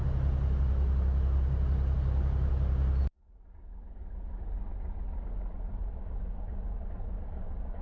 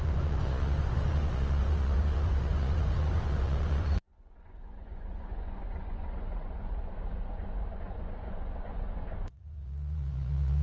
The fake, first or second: second